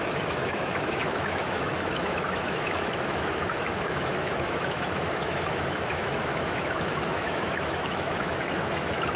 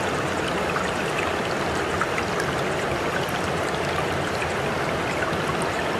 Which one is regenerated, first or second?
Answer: first